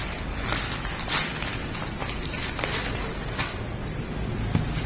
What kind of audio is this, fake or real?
real